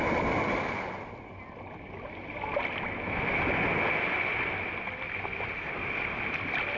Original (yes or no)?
yes